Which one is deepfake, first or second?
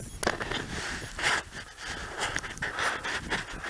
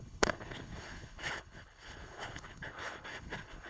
second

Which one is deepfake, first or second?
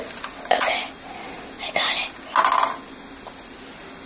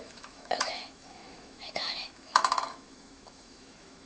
second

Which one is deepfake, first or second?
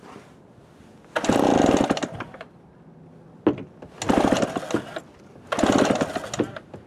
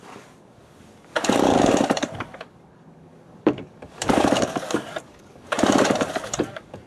second